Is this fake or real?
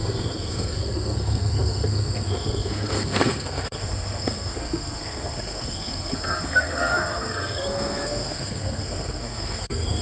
fake